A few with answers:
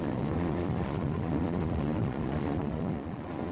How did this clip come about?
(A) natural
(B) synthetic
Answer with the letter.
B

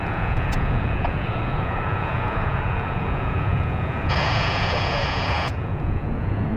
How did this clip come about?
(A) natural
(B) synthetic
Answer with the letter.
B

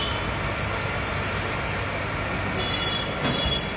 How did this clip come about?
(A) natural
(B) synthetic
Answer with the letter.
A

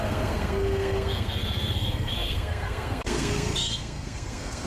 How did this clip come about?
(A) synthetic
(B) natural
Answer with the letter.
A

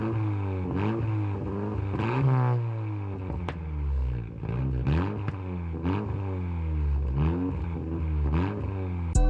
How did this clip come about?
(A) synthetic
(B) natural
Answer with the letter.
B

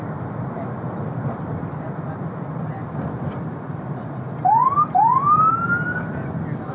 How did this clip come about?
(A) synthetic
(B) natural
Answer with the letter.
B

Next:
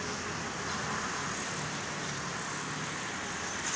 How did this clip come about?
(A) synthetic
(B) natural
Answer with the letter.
B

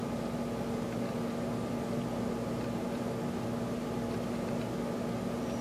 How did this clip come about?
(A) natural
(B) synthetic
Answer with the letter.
A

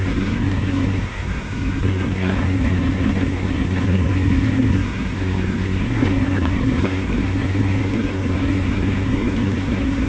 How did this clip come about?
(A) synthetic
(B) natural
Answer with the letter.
A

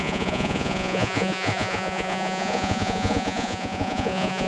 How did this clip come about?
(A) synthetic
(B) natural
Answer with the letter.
A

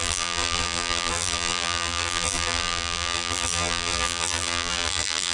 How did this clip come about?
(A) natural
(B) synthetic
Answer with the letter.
B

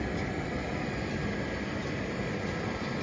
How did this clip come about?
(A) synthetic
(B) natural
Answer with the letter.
B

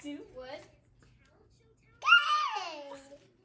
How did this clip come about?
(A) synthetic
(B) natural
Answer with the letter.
B